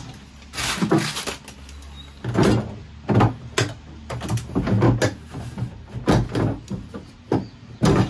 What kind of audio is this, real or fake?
real